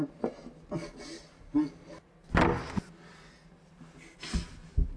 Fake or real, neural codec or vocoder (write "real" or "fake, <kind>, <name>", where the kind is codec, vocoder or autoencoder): real